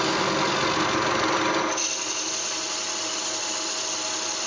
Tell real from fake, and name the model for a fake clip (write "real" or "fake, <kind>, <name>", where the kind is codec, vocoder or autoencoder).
real